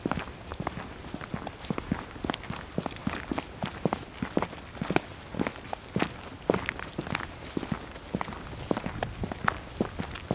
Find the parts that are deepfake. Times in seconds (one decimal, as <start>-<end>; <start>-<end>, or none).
none